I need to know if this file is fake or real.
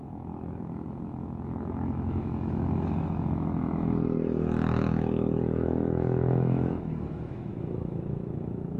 fake